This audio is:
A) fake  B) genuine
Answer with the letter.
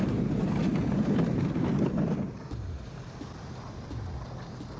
B